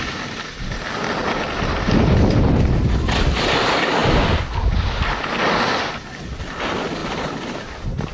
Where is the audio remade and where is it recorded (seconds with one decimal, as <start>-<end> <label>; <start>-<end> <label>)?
0.0-1.2 recorded; 1.2-2.1 remade; 2.1-7.0 recorded; 7.0-8.1 remade